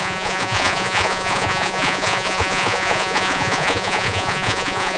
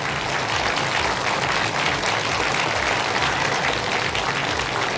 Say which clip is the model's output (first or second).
first